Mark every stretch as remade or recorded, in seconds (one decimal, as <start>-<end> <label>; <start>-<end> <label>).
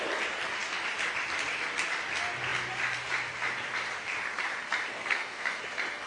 0.0-4.9 recorded; 4.9-5.6 remade; 5.6-6.1 recorded